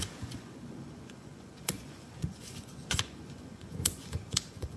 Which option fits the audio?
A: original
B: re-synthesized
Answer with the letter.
B